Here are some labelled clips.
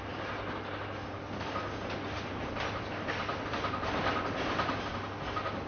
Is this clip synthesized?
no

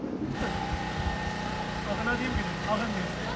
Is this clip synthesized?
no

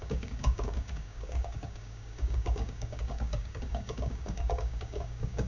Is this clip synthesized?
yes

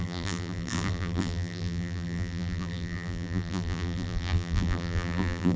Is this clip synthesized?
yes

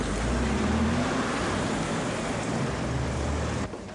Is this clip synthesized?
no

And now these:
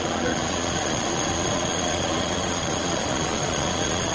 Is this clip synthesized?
yes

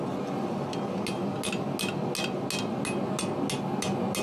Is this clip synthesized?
no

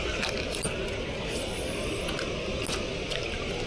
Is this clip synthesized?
no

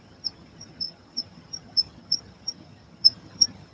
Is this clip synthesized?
yes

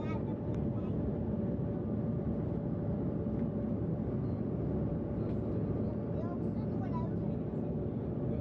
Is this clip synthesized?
no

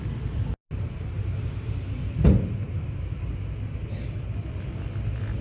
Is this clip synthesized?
no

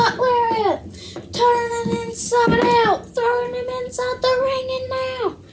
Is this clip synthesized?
no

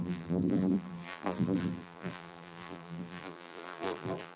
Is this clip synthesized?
yes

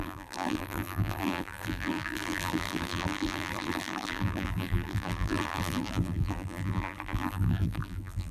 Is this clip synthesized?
yes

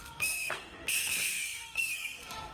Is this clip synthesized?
yes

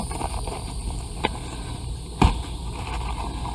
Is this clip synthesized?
no